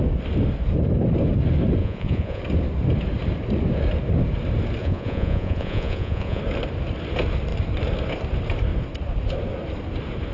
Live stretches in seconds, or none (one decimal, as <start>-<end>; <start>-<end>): 0.0-1.8; 2.4-4.8; 6.4-10.3